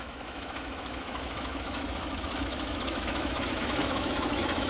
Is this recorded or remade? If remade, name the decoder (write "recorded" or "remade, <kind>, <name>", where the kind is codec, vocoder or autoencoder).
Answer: remade, autoencoder, DAC-VAE